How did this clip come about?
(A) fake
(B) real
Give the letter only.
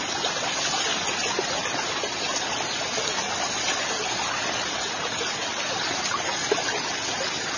B